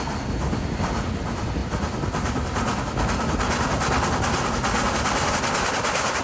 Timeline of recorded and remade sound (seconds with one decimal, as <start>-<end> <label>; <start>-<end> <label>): 0.0-6.2 recorded